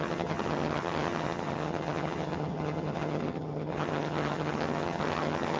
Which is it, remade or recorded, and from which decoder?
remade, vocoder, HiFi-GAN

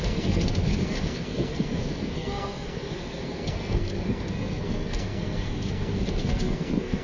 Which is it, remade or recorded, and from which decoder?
remade, codec, SNAC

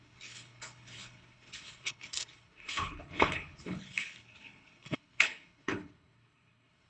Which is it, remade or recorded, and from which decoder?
remade, codec, HILCodec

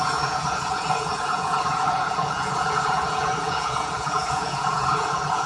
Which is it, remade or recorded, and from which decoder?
remade, vocoder, Vocos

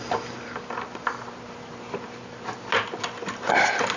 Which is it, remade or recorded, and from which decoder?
recorded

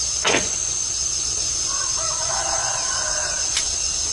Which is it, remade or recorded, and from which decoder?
remade, vocoder, Vocos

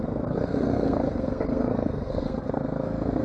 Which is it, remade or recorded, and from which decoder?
remade, codec, SNAC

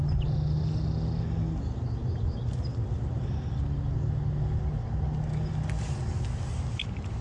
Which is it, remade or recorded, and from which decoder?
recorded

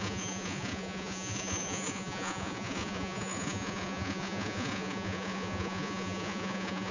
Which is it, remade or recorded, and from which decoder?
remade, vocoder, Vocos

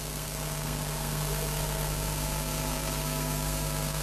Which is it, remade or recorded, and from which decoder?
remade, codec, SNAC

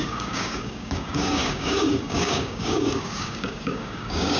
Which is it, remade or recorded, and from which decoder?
remade, codec, DAC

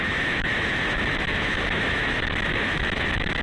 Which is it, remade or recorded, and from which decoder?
remade, autoencoder, DAC-VAE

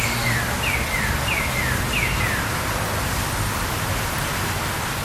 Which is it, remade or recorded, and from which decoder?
recorded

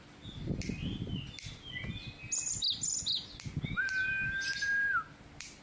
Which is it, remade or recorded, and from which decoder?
recorded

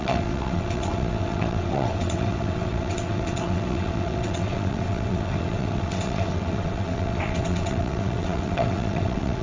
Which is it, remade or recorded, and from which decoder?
remade, vocoder, WaveNeXt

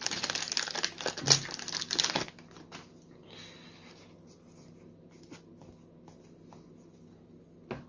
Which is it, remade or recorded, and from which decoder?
recorded